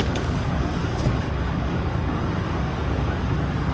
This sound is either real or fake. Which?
fake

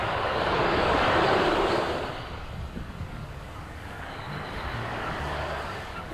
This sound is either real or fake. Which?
fake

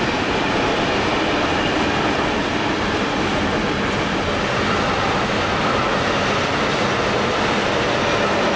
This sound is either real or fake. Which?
real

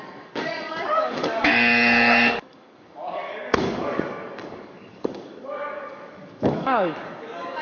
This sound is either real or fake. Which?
fake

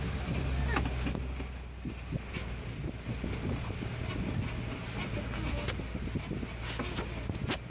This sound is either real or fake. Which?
real